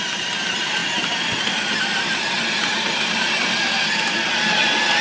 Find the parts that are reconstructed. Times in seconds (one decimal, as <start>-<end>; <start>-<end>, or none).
none